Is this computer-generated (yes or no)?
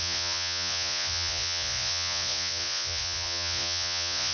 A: yes